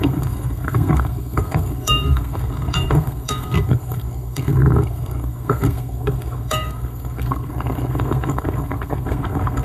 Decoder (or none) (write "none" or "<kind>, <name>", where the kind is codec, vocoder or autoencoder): codec, SNAC